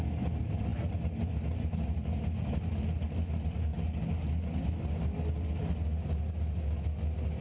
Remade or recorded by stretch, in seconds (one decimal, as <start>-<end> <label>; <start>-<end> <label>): 0.0-7.4 recorded